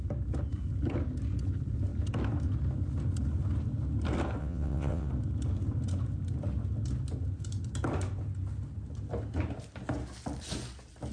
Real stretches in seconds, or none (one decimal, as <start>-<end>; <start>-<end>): 0.0-4.4; 5.1-11.1